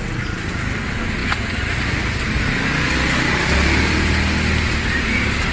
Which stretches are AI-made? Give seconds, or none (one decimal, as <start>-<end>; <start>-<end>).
none